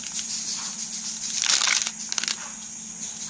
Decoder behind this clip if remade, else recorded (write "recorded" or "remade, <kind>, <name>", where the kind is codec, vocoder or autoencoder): recorded